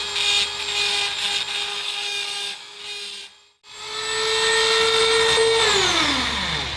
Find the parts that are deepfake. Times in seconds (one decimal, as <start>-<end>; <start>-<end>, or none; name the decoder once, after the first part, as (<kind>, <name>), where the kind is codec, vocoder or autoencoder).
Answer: 1.7-2.8 (codec, DAC)